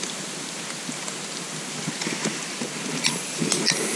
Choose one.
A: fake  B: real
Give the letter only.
B